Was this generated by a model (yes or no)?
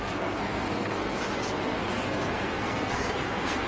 yes